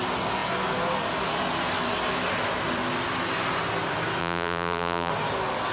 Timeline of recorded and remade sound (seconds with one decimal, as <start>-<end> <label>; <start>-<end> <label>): 0.0-4.2 recorded; 4.2-5.1 remade; 5.1-5.7 recorded